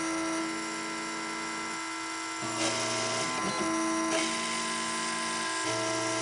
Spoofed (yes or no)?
no